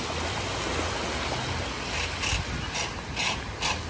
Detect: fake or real real